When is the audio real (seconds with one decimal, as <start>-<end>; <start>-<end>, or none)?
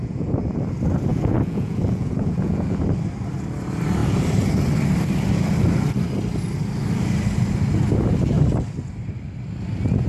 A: 0.5-1.1; 2.8-10.1